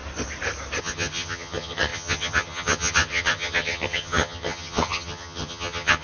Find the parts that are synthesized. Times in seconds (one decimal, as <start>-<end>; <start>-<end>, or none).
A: 0.8-6.0